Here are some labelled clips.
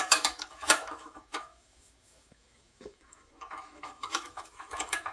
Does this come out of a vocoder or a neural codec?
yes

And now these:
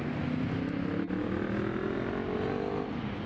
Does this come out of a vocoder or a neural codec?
no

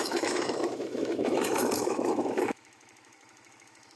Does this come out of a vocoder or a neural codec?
yes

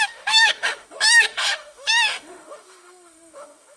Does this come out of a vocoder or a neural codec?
yes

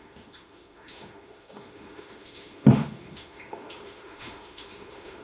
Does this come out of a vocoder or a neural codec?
yes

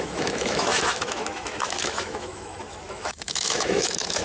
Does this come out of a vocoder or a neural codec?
yes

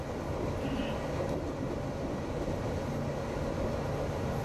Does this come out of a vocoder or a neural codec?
no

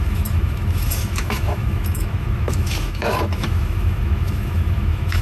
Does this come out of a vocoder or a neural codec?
yes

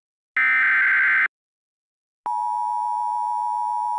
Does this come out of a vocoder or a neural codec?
no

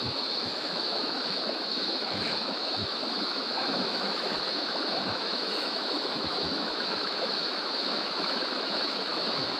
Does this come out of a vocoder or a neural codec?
yes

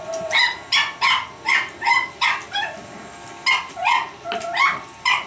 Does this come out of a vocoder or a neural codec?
no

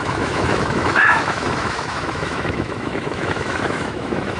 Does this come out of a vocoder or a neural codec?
yes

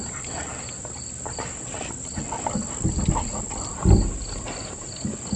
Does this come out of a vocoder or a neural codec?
no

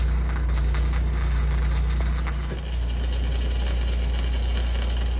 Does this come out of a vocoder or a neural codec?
no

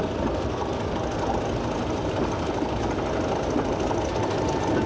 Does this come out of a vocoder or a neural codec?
no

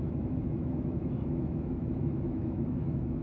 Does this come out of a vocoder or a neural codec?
yes